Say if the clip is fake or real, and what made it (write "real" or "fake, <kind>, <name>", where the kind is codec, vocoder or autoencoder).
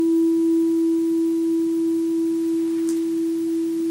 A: real